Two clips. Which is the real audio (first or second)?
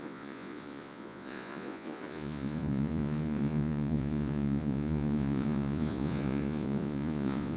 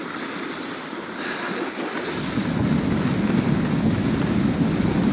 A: second